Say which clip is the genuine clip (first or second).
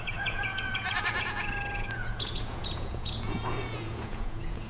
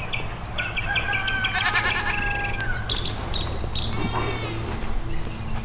second